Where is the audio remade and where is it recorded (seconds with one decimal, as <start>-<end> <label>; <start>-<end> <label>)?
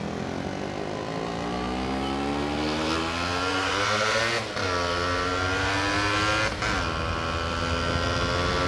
0.0-3.5 recorded; 3.5-4.2 remade; 4.2-8.7 recorded